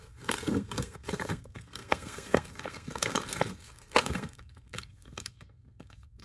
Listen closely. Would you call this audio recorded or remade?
remade